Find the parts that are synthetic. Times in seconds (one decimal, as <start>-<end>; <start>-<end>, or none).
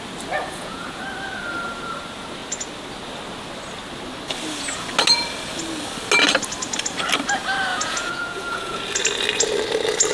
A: 0.4-1.0; 7.7-8.8